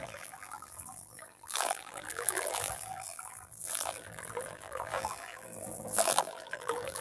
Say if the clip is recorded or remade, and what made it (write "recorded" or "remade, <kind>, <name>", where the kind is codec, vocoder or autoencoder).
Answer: remade, vocoder, BigVGAN v2